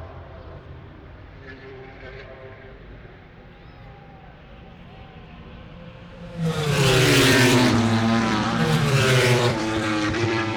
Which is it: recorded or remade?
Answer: remade